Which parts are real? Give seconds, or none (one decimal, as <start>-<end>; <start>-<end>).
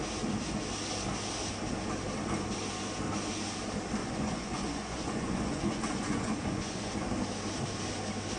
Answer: 0.0-4.0; 6.9-8.4